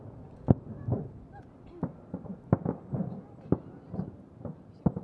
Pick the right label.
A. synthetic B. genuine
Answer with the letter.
B